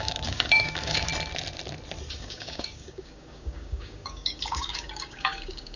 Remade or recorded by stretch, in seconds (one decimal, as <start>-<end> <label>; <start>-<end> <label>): 0.0-1.1 remade; 1.1-2.2 recorded; 2.2-5.8 remade